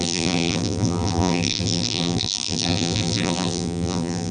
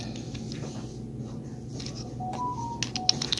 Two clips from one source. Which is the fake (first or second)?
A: first